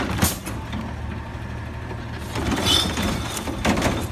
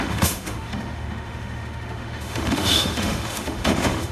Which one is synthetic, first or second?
second